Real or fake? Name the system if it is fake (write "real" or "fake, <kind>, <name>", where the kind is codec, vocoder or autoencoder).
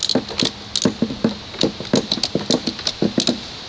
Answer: real